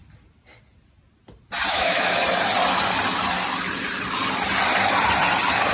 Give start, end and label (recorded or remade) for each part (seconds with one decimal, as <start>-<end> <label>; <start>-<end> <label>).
0.0-1.7 recorded; 1.7-2.2 remade; 2.2-5.7 recorded